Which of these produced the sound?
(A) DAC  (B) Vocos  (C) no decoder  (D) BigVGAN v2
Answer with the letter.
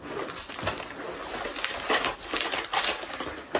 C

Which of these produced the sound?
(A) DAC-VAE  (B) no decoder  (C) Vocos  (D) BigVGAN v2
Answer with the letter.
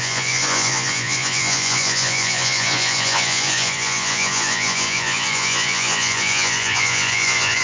C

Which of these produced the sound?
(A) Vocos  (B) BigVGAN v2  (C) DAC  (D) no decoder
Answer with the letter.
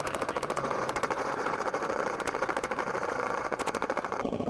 A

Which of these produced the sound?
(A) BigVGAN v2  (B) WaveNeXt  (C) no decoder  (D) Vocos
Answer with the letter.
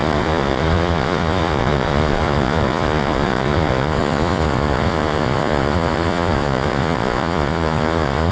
D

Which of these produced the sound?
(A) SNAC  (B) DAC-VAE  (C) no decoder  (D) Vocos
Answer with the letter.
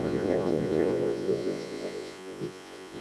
D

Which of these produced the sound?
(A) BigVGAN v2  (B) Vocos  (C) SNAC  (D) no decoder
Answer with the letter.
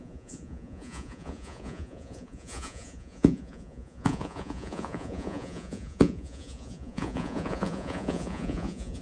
B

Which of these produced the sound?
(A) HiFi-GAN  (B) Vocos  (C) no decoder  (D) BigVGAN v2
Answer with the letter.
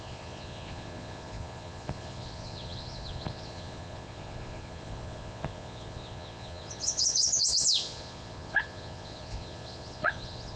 B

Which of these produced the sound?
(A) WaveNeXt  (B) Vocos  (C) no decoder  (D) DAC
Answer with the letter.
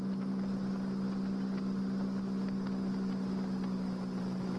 C